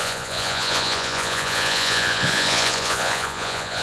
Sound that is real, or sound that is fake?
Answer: fake